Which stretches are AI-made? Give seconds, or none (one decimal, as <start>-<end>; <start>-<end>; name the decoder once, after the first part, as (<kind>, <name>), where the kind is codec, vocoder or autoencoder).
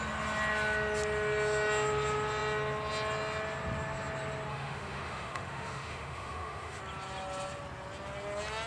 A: 4.5-6.8 (autoencoder, DAC-VAE)